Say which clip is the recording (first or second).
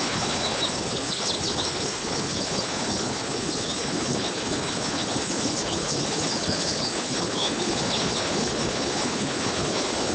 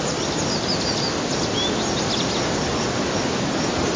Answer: second